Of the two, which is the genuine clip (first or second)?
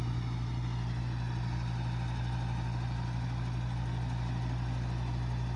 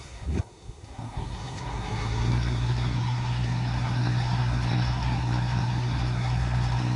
first